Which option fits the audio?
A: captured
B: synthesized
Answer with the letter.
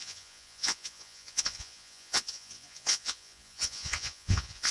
B